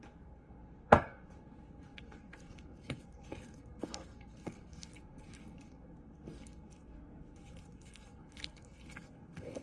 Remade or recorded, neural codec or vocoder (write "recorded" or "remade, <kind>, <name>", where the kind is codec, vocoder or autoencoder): remade, codec, SNAC